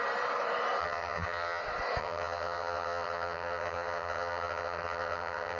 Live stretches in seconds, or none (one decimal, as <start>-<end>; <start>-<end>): 0.0-0.8; 1.6-2.0